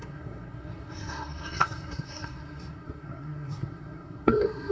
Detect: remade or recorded remade